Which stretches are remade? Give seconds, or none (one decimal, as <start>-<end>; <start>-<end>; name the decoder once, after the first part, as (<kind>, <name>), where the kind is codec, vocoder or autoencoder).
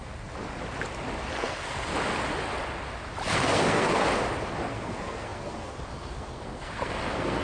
1.4-1.9 (codec, SNAC); 3.3-4.0; 4.6-7.4